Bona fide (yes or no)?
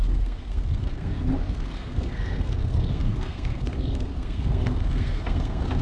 no